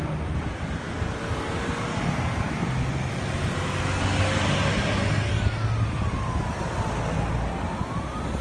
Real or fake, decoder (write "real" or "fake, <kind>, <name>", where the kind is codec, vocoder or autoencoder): real